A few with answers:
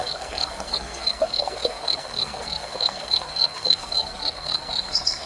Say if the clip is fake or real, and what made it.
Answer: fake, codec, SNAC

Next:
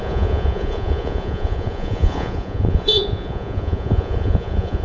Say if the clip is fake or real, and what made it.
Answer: fake, vocoder, Vocos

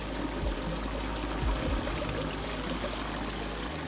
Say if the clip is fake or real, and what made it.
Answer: real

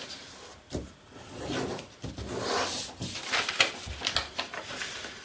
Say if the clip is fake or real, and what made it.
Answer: real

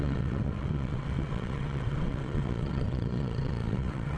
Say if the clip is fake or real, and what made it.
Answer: fake, vocoder, WaveNeXt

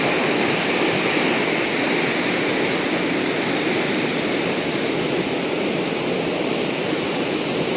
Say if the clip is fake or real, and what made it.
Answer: real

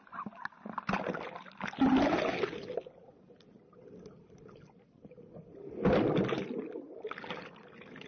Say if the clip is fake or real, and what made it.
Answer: real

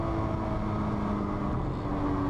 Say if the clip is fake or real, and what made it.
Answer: real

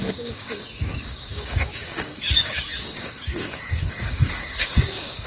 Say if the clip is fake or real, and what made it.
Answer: fake, codec, DAC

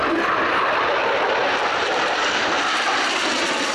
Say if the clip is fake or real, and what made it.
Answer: real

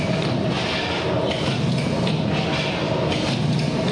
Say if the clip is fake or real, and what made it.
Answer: real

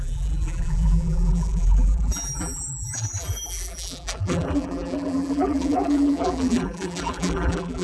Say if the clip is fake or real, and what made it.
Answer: fake, vocoder, BigVGAN v2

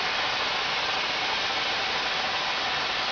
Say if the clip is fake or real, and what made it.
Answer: real